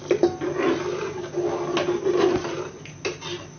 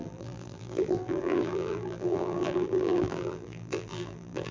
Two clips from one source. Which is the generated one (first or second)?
second